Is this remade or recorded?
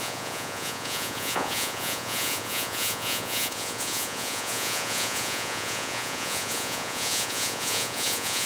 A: remade